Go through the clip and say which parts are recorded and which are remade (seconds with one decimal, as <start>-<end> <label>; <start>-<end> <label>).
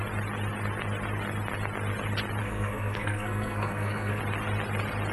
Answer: 0.0-2.4 recorded; 2.4-4.2 remade; 4.2-5.1 recorded